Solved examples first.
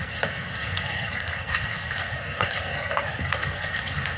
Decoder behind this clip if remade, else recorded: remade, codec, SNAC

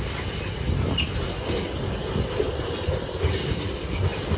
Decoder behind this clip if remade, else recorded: recorded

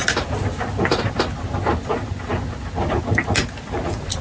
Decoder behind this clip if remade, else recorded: recorded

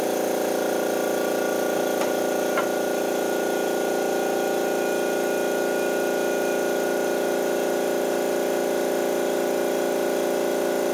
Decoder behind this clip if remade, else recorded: recorded